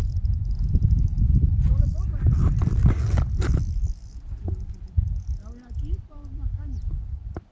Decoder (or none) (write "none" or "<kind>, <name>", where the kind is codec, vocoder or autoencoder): none